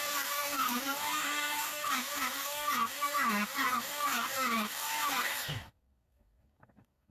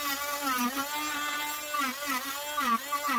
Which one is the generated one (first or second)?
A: first